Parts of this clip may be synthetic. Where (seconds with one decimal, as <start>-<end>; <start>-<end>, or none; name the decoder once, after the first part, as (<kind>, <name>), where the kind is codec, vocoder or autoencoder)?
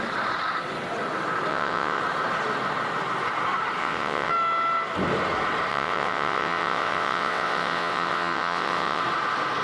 1.5-2.0 (vocoder, WaveNeXt); 3.8-4.3; 5.7-9.0